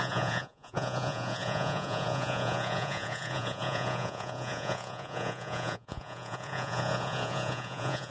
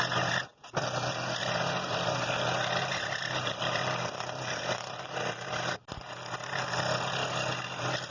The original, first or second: second